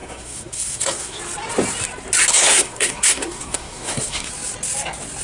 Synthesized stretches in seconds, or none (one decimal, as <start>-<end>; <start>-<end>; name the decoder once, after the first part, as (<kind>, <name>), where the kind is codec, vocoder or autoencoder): 0.0-1.2 (codec, SNAC); 2.3-4.3